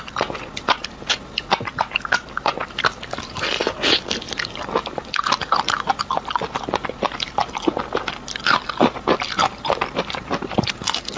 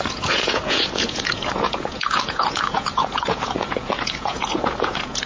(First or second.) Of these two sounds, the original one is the first